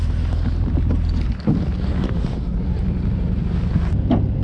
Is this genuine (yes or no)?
yes